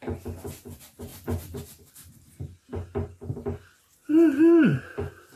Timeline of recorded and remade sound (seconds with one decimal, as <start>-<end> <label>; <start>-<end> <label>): 0.0-5.4 recorded